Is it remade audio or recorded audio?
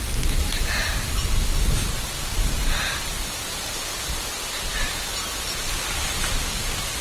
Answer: recorded